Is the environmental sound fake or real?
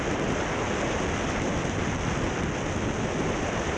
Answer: real